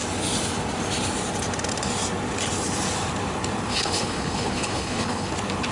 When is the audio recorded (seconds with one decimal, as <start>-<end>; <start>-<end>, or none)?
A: 0.0-3.7; 5.3-5.7